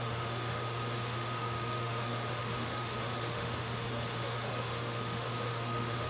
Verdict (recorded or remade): remade